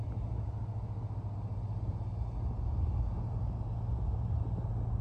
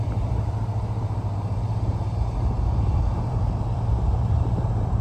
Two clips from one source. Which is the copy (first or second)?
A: second